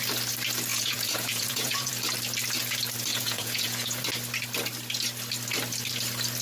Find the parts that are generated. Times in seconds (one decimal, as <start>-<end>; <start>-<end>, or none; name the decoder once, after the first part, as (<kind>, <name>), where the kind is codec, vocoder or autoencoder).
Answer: 0.7-1.9 (vocoder, Vocos); 3.1-4.0